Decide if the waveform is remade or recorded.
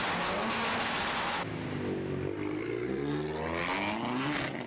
recorded